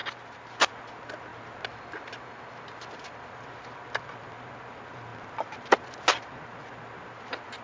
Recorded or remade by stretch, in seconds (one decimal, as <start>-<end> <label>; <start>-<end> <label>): 0.0-0.7 remade; 0.7-7.6 recorded